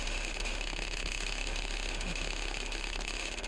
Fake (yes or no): yes